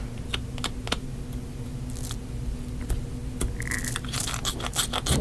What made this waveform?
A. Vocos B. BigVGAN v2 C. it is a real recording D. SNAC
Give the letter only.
C